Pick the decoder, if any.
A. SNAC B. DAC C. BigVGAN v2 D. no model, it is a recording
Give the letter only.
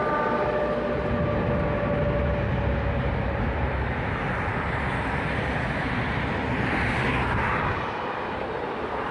D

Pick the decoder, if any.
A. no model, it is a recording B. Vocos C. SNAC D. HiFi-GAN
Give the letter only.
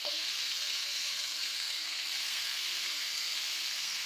C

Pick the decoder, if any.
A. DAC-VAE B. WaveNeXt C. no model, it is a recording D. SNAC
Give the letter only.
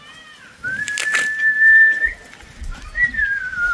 C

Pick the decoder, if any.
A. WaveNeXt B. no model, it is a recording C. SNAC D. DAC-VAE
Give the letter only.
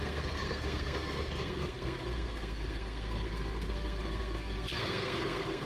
C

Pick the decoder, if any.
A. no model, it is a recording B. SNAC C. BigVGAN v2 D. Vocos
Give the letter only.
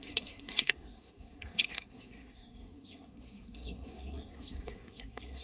B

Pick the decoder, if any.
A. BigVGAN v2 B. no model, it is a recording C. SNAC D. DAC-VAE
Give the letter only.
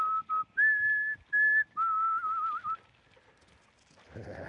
B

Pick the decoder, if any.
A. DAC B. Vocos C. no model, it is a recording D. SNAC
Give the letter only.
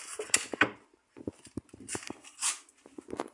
C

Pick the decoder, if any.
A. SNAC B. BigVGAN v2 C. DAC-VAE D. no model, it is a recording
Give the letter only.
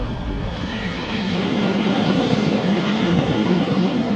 A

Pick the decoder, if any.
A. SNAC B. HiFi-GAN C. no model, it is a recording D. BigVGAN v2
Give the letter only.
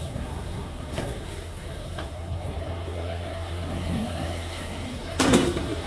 A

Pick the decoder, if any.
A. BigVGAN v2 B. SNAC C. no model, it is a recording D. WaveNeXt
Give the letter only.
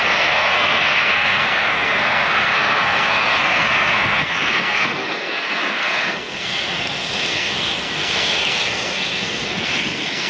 B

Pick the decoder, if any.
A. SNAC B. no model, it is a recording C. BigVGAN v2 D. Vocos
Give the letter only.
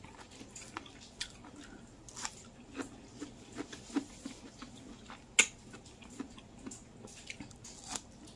B